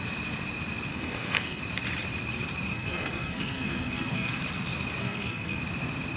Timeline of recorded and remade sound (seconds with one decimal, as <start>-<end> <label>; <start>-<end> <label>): 0.0-0.9 recorded; 0.9-1.6 remade; 1.6-2.7 recorded; 2.7-4.4 remade; 4.4-5.0 recorded; 5.0-5.6 remade; 5.6-6.2 recorded